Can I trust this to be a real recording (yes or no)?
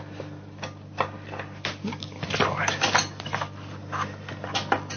yes